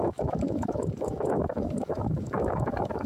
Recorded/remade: remade